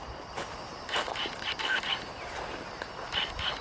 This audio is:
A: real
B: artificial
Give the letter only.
A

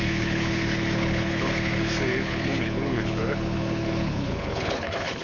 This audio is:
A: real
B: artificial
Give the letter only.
B